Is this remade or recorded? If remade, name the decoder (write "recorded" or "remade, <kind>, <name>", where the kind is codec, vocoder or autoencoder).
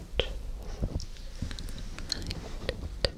recorded